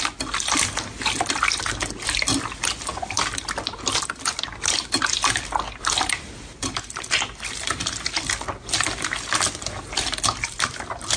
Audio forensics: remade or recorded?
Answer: recorded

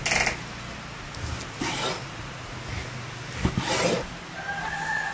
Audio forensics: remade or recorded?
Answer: recorded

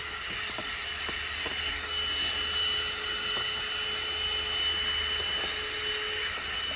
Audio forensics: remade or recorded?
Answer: recorded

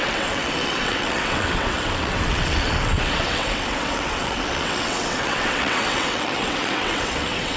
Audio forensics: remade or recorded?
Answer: remade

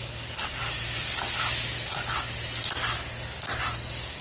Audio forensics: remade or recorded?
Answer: recorded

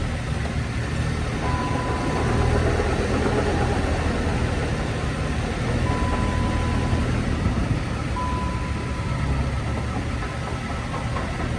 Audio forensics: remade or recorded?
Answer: recorded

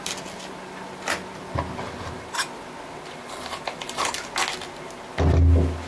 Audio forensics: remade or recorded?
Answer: recorded